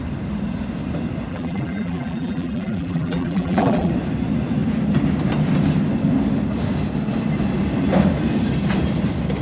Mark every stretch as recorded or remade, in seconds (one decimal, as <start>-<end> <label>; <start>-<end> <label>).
0.0-1.3 recorded; 1.3-3.9 remade; 3.9-9.4 recorded